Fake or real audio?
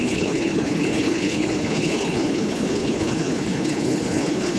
fake